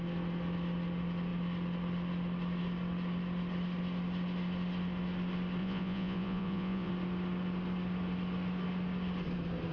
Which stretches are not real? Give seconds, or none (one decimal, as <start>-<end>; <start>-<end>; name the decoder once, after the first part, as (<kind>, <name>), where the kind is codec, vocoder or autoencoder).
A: 5.6-6.9 (vocoder, Vocos)